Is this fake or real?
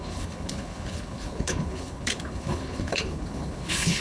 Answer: fake